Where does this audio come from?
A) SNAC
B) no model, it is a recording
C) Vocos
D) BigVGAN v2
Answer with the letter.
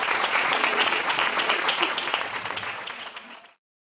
C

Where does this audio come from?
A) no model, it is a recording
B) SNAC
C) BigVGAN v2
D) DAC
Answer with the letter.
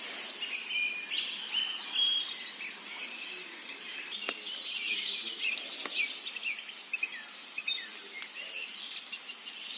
C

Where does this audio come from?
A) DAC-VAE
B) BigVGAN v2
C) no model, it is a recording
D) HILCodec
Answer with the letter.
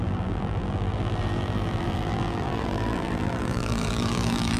B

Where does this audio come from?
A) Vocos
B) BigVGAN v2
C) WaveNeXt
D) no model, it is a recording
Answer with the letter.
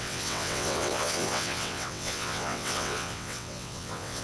C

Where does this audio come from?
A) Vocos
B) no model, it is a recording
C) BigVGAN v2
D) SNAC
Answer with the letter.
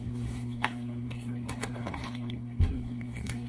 D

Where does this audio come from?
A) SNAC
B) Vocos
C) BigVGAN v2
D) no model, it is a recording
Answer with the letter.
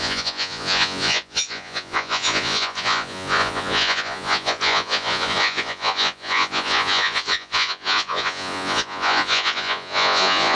B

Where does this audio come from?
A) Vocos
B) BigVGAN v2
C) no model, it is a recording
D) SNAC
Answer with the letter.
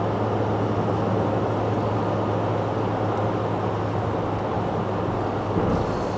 C